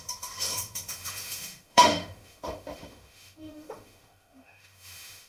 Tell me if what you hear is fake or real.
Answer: fake